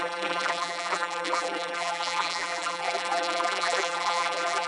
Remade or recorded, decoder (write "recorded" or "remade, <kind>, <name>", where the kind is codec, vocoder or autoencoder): remade, vocoder, BigVGAN v2